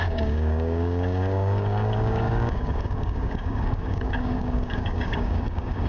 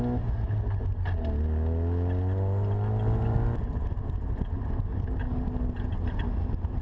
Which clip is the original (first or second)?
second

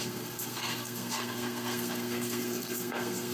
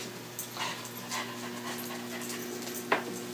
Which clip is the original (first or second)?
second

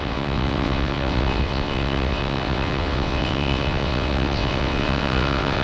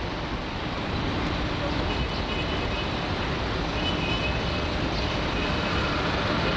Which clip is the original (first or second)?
second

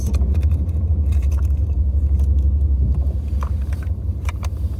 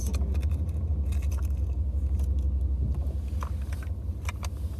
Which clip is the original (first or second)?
second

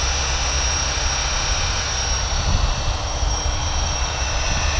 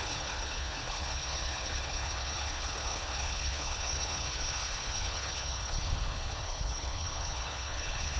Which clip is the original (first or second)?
first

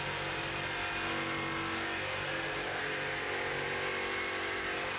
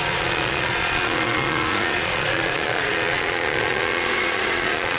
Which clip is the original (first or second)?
first